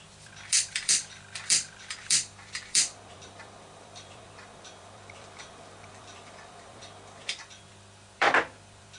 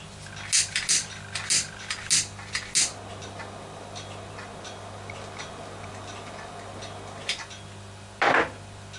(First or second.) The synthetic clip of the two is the first